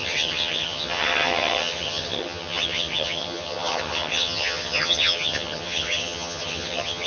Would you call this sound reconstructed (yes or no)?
yes